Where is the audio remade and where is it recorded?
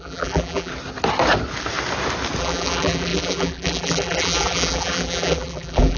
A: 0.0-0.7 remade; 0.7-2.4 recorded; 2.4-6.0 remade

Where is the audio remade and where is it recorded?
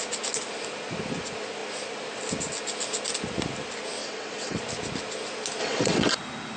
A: 0.0-4.0 recorded; 4.0-4.6 remade; 4.6-5.6 recorded; 5.6-6.1 remade; 6.1-6.6 recorded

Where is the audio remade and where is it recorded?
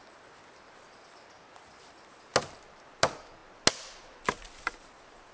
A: 0.0-5.3 recorded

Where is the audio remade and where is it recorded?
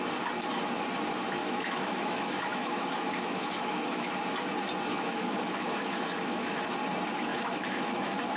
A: 0.0-1.4 recorded; 1.4-4.1 remade; 4.1-4.9 recorded; 4.9-6.7 remade; 6.7-7.3 recorded; 7.3-8.4 remade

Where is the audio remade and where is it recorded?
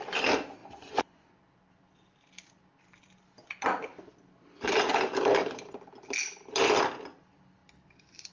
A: 0.0-0.6 recorded; 0.6-1.4 remade; 1.4-8.3 recorded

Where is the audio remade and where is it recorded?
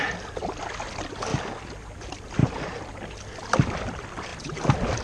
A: 0.0-2.4 recorded; 2.4-3.0 remade; 3.0-5.0 recorded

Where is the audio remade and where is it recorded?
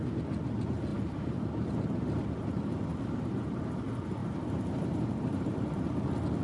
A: 0.0-0.9 recorded; 0.9-1.7 remade; 1.7-2.9 recorded; 2.9-3.6 remade; 3.6-4.2 recorded; 4.2-6.0 remade; 6.0-6.4 recorded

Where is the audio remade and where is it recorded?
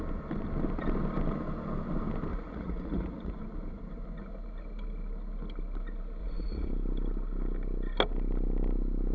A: 0.0-2.3 recorded; 2.3-3.4 remade; 3.4-6.2 recorded; 6.2-6.7 remade; 6.7-9.1 recorded